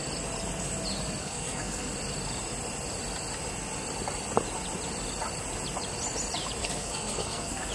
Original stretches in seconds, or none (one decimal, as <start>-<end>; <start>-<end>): 0.0-1.2; 1.9-6.6